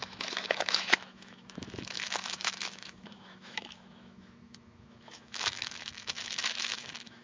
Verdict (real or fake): fake